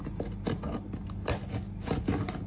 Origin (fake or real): real